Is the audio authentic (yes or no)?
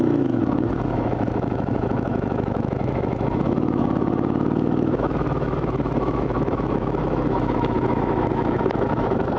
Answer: no